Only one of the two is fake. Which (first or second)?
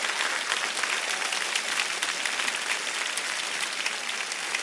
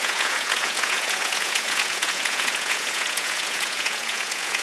second